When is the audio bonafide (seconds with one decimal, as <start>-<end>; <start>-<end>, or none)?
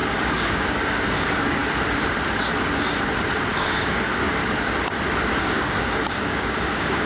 1.6-3.6; 4.4-5.4